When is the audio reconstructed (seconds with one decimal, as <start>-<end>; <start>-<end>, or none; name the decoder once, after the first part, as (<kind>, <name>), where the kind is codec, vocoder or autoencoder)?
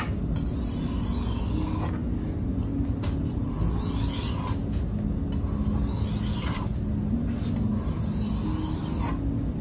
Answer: none